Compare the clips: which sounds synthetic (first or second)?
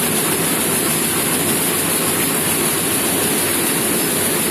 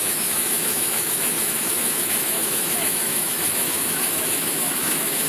second